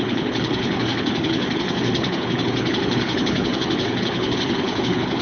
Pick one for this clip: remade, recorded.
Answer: remade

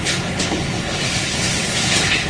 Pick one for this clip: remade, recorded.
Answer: remade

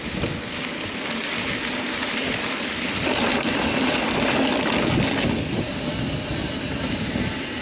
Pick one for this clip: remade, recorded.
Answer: recorded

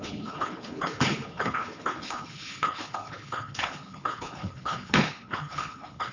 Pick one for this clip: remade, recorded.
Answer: remade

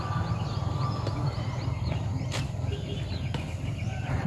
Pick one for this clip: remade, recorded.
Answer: recorded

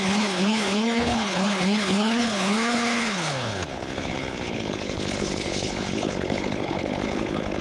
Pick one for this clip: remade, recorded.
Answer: remade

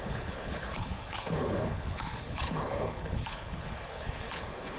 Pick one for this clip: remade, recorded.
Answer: remade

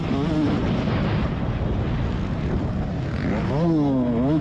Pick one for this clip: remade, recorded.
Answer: recorded